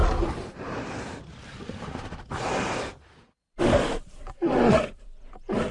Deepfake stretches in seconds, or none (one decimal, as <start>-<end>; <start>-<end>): 3.4-5.7